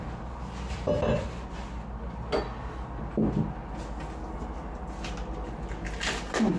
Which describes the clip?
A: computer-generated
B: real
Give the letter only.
B